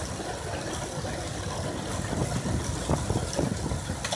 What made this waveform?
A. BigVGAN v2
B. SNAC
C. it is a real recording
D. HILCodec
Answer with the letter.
C